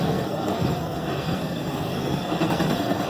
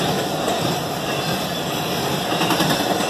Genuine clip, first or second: second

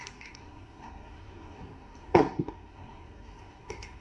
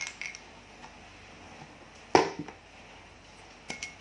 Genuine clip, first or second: second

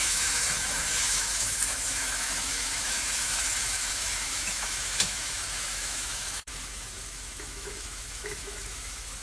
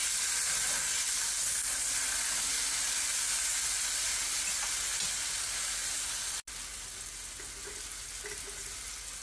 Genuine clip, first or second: second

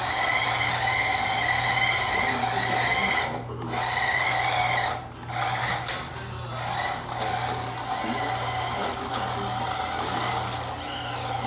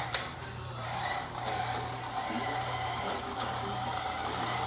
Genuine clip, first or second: first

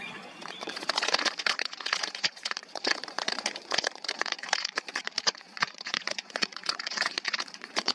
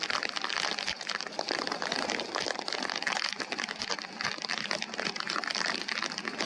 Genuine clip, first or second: second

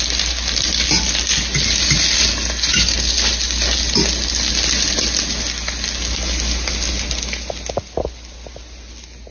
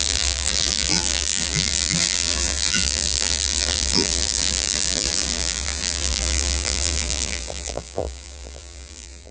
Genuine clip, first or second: first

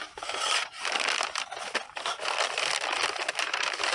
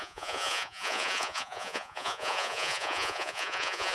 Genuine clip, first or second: first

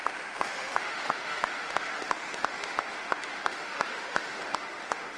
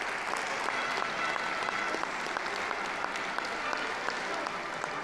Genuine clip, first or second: second